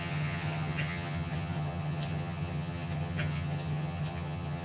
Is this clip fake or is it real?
fake